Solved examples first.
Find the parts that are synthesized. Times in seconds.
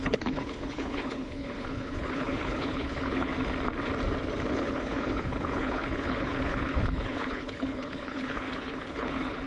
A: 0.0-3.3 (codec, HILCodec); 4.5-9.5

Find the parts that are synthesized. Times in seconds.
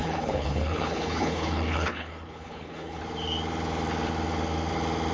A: 0.0-3.0 (codec, HILCodec)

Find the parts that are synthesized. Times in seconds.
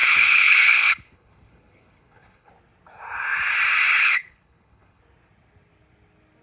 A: 0.0-2.5 (codec, HILCodec); 4.0-5.0